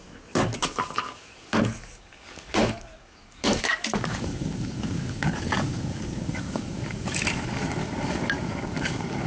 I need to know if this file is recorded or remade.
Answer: remade